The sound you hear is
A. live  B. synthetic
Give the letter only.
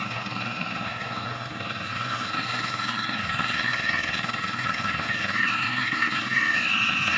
B